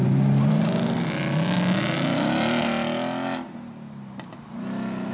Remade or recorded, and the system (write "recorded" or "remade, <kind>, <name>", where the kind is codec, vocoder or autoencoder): recorded